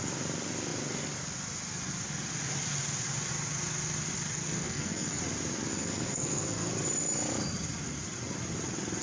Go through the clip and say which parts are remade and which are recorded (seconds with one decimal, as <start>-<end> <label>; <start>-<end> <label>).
0.0-4.4 recorded; 4.4-5.2 remade; 5.2-5.7 recorded; 5.7-6.7 remade; 6.7-9.0 recorded